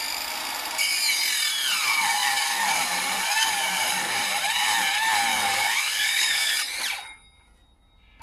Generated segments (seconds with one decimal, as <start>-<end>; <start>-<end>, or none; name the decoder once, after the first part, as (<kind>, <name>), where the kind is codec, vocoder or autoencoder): 1.9-4.1 (codec, DAC); 5.3-6.5